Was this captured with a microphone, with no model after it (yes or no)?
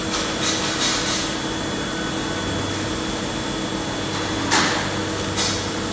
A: yes